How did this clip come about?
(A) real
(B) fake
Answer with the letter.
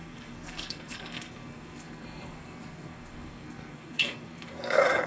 B